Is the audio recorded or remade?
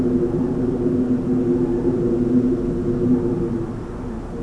recorded